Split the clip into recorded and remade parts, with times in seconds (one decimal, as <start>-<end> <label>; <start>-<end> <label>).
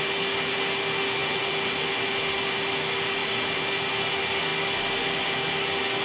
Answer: 0.0-6.0 recorded